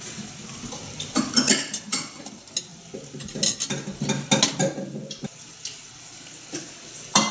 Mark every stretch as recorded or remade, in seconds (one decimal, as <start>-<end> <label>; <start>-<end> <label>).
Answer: 0.0-7.3 recorded